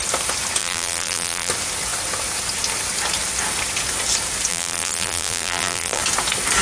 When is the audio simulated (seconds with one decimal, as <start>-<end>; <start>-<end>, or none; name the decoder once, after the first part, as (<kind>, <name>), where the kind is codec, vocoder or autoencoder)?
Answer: 0.6-1.5 (vocoder, BigVGAN v2); 4.5-6.0